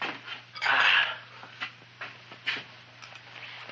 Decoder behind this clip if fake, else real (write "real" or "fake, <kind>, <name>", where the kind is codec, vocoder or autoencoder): real